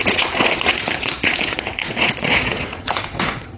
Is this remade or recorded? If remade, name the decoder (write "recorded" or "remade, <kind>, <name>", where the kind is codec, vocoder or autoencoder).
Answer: remade, vocoder, Vocos